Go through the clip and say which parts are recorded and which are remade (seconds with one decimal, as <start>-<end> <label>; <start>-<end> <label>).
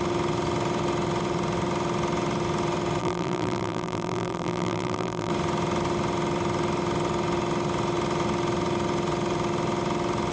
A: 0.0-3.0 recorded; 3.0-5.3 remade; 5.3-10.3 recorded